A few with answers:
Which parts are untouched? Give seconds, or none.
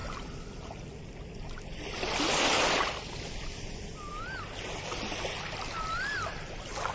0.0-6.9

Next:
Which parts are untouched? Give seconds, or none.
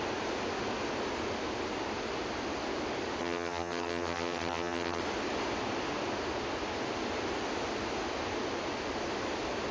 0.0-3.2; 5.0-9.7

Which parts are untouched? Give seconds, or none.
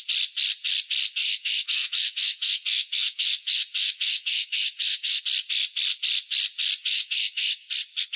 0.0-1.2; 5.2-6.8; 7.7-8.2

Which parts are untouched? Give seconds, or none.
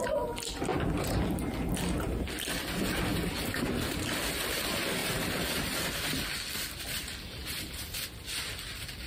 0.0-3.1; 4.0-5.0; 6.0-7.4; 8.2-9.1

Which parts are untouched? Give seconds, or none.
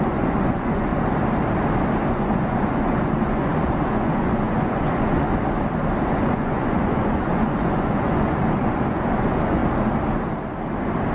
0.9-2.1; 5.3-6.1; 9.6-11.1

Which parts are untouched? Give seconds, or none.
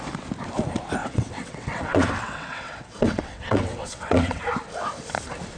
0.0-1.0; 4.4-5.6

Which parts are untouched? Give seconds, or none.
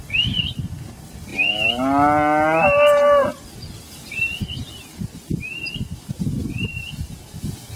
1.3-6.0